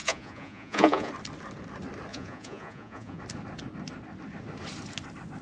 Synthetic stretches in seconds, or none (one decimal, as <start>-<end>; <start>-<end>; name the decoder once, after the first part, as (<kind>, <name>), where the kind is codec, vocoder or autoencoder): 0.0-1.1 (vocoder, Vocos); 2.1-3.2